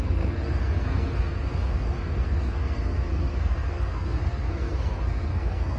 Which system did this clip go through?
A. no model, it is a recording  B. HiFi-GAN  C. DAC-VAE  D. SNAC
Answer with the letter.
D